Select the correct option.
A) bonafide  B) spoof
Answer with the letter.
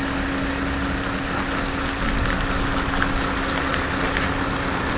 A